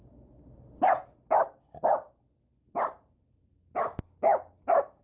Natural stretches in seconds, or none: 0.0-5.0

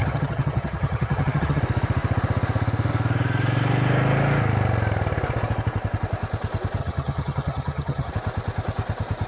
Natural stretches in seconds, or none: 1.6-6.8; 8.1-9.3

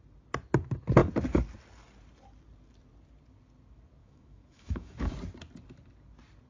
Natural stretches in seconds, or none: 0.0-4.0; 5.1-6.5

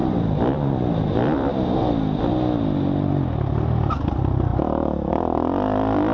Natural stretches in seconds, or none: 1.9-6.1

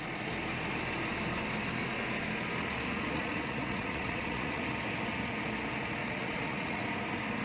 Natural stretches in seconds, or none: 0.0-2.9; 4.6-6.0; 6.8-7.4